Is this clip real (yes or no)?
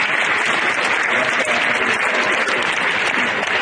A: yes